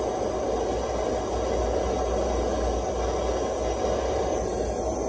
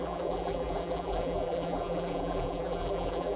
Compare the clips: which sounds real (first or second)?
first